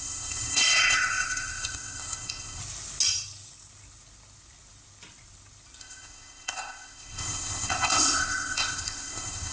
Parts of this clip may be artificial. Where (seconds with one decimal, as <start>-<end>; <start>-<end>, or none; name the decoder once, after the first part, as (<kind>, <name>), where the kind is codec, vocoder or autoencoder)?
0.0-2.6 (codec, ZipCodec); 5.8-9.5